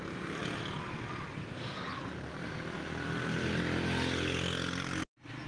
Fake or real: real